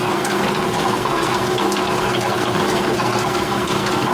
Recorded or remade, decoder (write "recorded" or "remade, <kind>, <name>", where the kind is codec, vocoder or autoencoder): remade, codec, SNAC